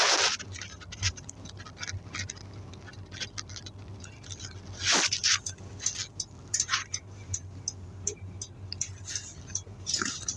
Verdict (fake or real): real